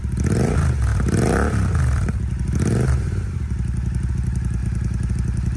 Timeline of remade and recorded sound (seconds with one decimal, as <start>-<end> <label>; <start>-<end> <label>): 0.0-4.6 remade; 4.6-5.1 recorded; 5.1-5.6 remade